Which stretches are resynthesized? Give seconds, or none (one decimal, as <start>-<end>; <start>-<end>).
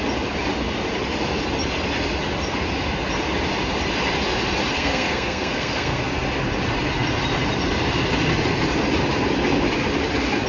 4.7-6.0